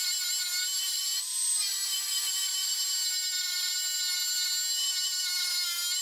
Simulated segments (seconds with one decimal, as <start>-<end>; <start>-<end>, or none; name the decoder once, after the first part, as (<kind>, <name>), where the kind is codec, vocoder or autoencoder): 0.9-2.8 (vocoder, BigVGAN v2)